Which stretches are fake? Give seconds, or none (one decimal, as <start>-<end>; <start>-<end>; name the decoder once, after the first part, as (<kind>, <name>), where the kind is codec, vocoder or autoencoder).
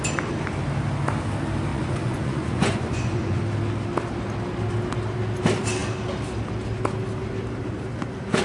1.7-3.4 (vocoder, Vocos)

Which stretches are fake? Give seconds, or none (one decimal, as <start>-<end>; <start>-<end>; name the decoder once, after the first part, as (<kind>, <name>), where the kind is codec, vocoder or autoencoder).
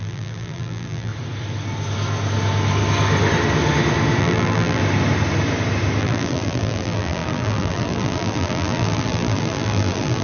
0.0-1.1 (vocoder, BigVGAN v2); 4.2-4.8; 6.0-10.2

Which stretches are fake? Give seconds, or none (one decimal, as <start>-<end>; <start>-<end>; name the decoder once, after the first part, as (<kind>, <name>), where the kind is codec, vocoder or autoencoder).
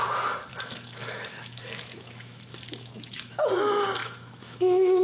0.5-3.5 (autoencoder, DAC-VAE); 4.0-5.0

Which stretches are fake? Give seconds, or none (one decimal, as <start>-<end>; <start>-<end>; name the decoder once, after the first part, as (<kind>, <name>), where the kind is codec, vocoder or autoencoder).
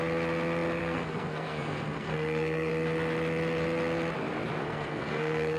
0.8-2.7 (codec, SNAC); 4.6-5.6